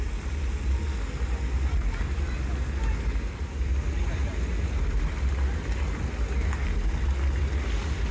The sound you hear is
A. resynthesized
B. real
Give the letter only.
B